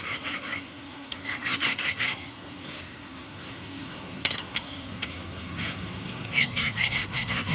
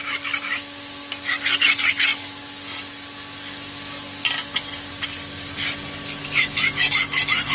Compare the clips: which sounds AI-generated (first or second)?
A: first